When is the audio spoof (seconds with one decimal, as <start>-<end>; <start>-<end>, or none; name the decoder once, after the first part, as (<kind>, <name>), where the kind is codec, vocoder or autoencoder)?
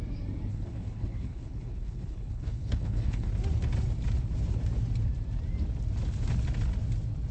0.5-3.3 (codec, HILCodec)